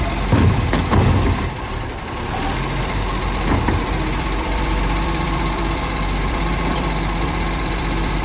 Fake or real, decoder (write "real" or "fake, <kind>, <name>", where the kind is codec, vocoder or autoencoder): fake, vocoder, BigVGAN v2